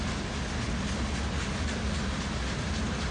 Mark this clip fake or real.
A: real